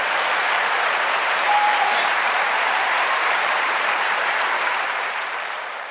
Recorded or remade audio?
remade